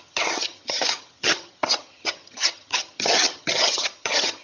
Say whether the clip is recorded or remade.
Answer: remade